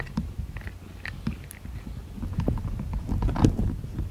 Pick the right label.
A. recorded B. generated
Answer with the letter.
A